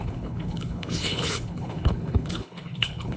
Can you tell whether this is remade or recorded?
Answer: remade